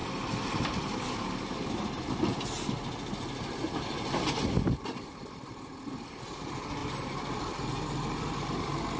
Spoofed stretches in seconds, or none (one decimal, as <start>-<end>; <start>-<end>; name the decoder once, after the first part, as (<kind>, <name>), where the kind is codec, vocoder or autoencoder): 6.8-8.2 (vocoder, BigVGAN v2)